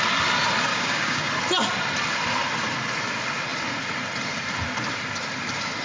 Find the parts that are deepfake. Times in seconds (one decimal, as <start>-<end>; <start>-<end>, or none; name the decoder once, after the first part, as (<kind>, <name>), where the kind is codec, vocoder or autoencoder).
0.7-1.3 (codec, DAC)